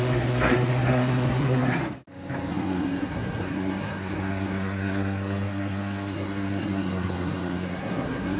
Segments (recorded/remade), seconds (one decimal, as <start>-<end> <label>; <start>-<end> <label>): 0.0-1.8 remade; 1.8-2.5 recorded; 2.5-8.4 remade